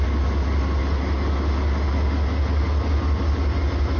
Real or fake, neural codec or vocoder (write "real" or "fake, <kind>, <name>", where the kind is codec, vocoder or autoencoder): real